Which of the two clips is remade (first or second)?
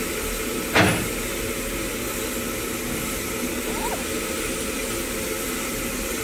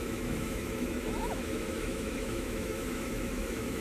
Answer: second